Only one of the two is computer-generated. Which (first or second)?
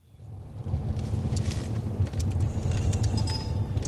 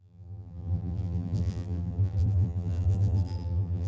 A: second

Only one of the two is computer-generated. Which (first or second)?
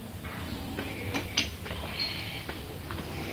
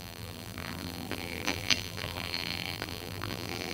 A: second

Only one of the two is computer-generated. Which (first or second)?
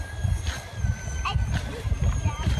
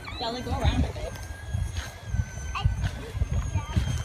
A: first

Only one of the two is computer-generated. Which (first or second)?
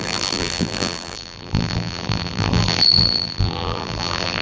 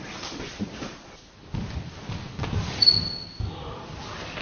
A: first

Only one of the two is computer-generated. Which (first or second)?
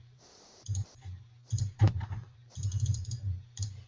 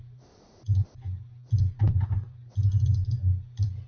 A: first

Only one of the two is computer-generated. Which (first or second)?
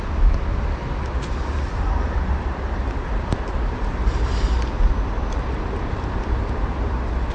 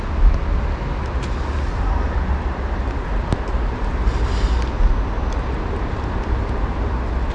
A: first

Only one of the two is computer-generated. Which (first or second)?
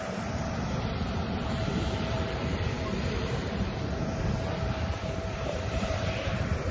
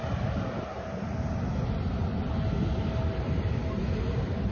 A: first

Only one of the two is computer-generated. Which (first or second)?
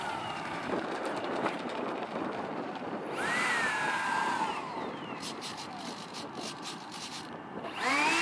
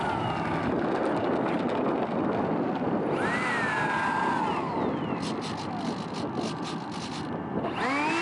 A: first